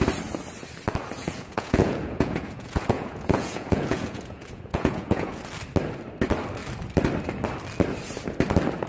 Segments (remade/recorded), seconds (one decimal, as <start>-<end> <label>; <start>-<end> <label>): 0.0-1.2 recorded; 1.2-5.4 remade; 5.4-8.9 recorded